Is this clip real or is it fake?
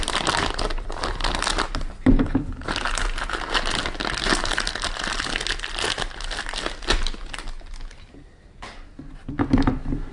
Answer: real